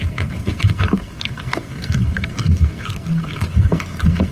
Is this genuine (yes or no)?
no